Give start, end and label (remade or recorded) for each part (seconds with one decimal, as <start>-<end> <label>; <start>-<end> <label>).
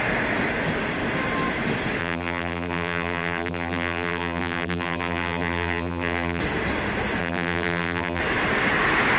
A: 0.0-2.0 recorded; 2.0-6.4 remade; 6.4-7.2 recorded; 7.2-8.2 remade; 8.2-9.2 recorded